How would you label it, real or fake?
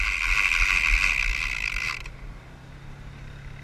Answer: real